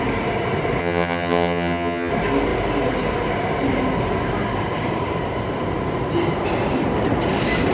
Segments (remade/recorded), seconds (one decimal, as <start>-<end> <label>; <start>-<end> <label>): 0.0-0.8 recorded; 0.8-2.1 remade; 2.1-7.7 recorded